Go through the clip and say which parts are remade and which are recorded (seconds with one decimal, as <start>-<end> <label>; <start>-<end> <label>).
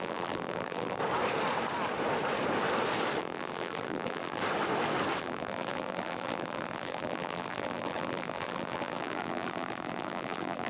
0.0-1.0 remade; 1.0-3.2 recorded; 3.2-4.4 remade; 4.4-5.2 recorded; 5.2-10.7 remade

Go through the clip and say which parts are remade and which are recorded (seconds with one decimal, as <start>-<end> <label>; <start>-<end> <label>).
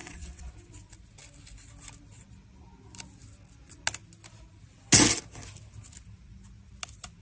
0.0-0.5 remade; 0.5-7.2 recorded